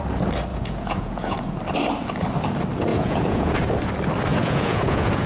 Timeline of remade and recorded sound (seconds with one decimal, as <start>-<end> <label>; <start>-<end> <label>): 0.0-0.5 recorded; 0.5-1.6 remade; 1.6-2.9 recorded; 2.9-3.6 remade; 3.6-4.3 recorded; 4.3-5.3 remade